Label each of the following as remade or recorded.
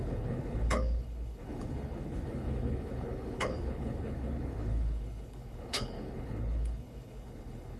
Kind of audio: remade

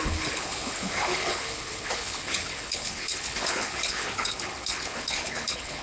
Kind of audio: remade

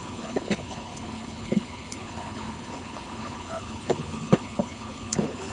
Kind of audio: remade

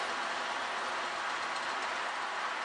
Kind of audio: recorded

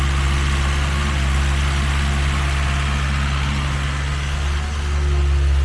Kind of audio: recorded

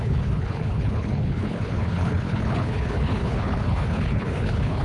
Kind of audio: remade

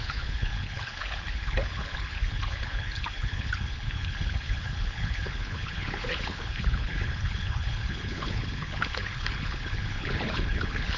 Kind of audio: remade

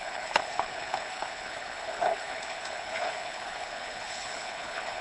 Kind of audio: remade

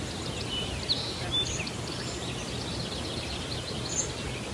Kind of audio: recorded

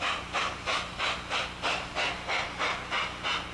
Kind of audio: recorded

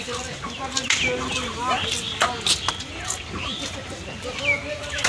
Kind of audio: recorded